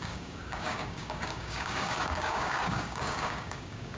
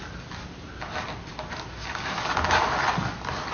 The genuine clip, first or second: second